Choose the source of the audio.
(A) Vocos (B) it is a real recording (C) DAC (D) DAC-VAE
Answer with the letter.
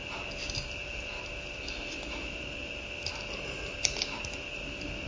B